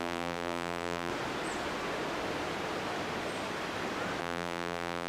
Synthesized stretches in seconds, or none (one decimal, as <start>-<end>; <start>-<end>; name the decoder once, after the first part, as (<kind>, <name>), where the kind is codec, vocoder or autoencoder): 0.0-1.1 (vocoder, BigVGAN v2); 4.2-5.1